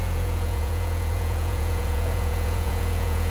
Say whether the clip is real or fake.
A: fake